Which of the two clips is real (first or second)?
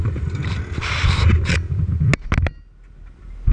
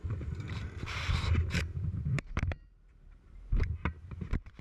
first